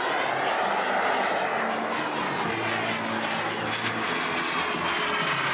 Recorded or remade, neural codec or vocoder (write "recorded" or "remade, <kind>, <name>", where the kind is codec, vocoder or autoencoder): recorded